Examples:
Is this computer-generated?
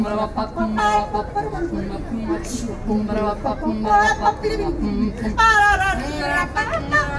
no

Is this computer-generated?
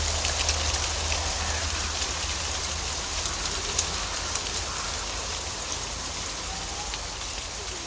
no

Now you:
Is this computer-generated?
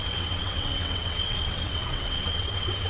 yes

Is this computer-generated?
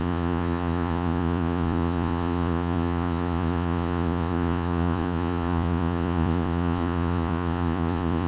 yes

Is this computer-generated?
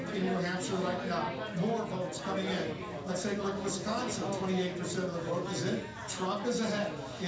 no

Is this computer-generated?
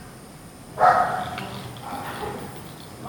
no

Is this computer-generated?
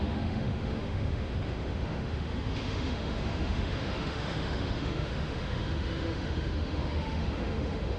yes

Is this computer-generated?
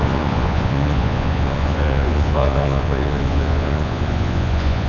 yes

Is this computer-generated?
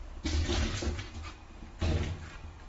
no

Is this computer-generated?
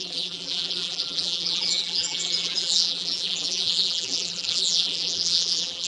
yes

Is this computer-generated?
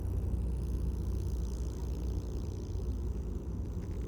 no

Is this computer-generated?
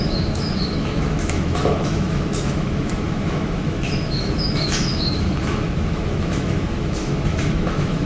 yes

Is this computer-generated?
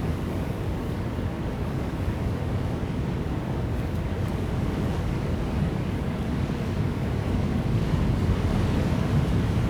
yes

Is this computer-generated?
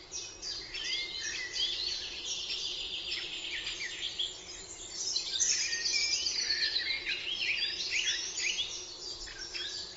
no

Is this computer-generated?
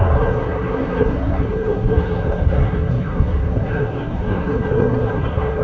yes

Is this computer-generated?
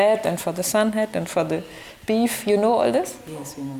no